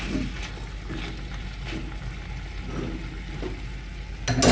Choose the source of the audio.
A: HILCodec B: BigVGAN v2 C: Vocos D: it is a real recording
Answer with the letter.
D